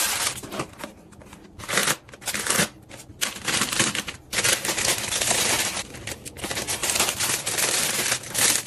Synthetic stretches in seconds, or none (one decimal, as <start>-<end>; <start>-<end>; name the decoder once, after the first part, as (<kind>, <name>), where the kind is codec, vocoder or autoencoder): 1.8-2.4 (vocoder, BigVGAN v2); 6.8-7.9